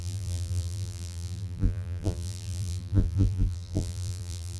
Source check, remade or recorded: remade